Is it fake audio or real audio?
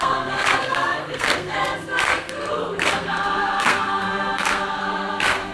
fake